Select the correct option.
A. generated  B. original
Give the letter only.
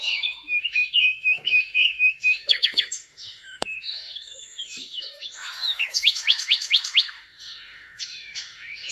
A